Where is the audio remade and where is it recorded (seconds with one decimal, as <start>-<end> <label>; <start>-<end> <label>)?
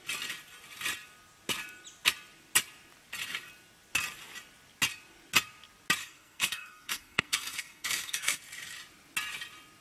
0.0-6.0 recorded; 6.0-8.4 remade; 8.4-9.8 recorded